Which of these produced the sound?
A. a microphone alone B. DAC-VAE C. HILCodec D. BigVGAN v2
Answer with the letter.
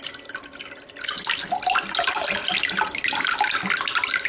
A